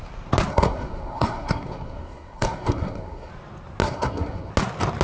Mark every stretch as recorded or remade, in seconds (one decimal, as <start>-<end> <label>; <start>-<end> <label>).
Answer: 0.0-0.5 recorded; 0.5-3.3 remade; 3.3-3.8 recorded; 3.8-4.5 remade; 4.5-5.0 recorded